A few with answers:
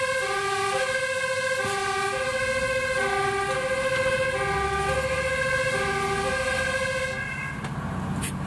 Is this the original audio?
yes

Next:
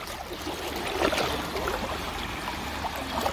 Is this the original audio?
yes